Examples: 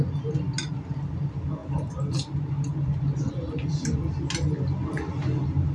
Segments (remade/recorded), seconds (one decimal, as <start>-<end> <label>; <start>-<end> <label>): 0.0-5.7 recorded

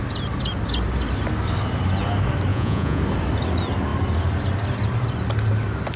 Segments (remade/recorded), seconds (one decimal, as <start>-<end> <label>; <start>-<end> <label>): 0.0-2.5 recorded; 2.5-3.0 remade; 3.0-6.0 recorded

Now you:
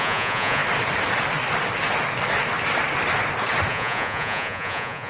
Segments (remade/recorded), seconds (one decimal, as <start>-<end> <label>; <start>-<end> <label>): 0.0-0.6 remade; 0.6-3.7 recorded; 3.7-5.1 remade